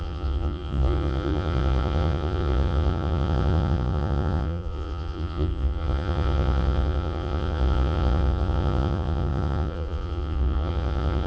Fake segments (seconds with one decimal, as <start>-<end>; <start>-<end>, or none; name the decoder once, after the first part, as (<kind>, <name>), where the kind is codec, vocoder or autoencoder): 0.0-11.3 (vocoder, Vocos)